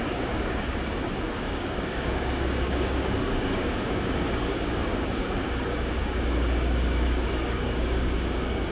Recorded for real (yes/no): no